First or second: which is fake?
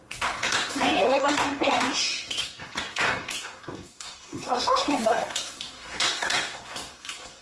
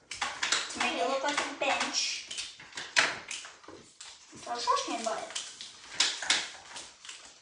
first